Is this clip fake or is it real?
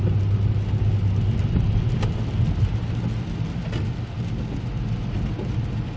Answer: real